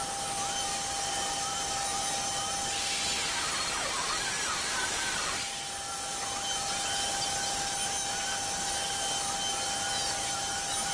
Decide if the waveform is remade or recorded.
recorded